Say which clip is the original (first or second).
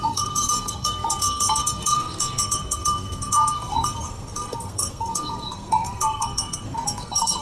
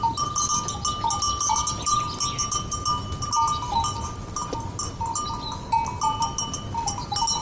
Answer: second